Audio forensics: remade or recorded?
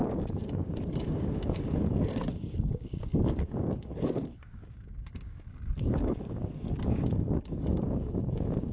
remade